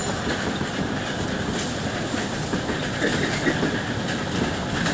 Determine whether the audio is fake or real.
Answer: real